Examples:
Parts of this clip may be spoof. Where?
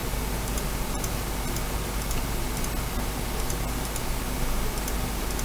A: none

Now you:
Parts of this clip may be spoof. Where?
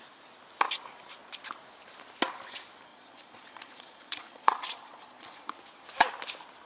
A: 2.9-5.6 (vocoder, Vocos)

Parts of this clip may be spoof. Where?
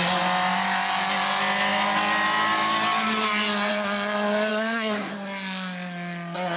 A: 4.5-5.1 (codec, SNAC)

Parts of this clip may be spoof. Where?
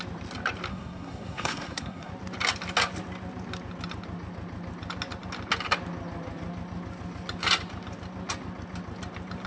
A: 0.7-2.1 (codec, SNAC)